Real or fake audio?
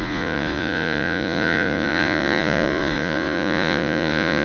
fake